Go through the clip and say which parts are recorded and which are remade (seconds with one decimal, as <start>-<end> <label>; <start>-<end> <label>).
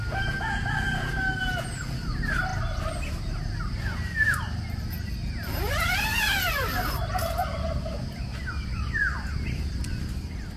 0.0-10.6 recorded